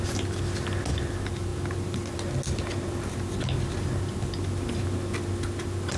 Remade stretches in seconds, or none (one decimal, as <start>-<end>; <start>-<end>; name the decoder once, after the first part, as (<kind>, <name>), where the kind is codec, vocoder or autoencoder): none

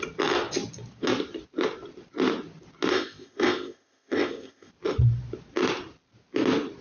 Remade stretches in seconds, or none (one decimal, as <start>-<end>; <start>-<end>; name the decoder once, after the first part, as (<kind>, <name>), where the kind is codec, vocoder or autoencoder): 2.9-4.7 (codec, ZipCodec)

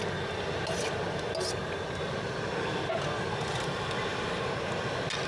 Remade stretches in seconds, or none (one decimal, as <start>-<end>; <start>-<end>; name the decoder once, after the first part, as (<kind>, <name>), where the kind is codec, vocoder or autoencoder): none